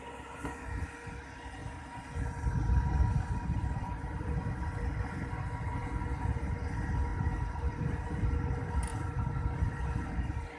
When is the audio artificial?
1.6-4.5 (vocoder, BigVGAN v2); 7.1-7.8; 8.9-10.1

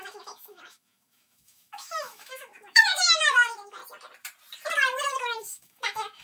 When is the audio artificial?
0.0-3.8 (autoencoder, DAC-VAE); 5.1-6.2

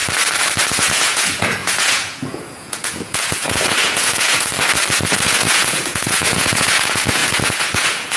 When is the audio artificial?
0.8-4.5 (vocoder, Vocos); 5.3-8.2

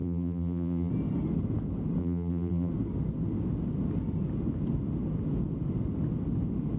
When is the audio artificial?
0.0-0.9 (vocoder, BigVGAN v2); 2.0-2.7

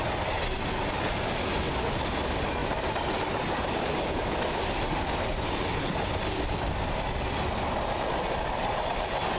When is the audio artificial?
none